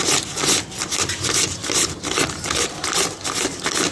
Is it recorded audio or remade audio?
recorded